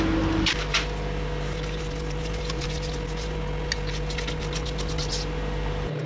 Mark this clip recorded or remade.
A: recorded